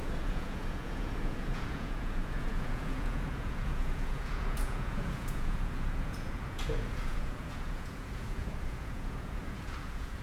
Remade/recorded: remade